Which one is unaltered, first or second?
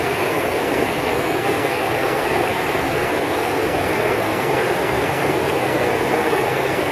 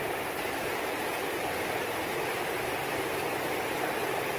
second